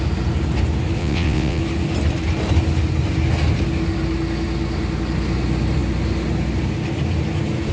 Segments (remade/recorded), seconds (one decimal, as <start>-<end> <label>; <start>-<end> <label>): 0.0-1.0 recorded; 1.0-1.6 remade; 1.6-7.7 recorded